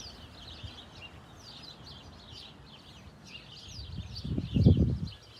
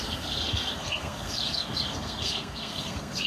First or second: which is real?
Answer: first